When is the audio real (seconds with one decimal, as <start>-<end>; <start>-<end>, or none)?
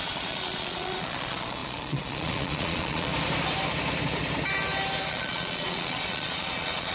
3.1-5.1